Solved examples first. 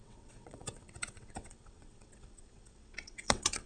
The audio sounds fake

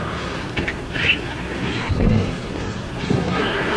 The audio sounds fake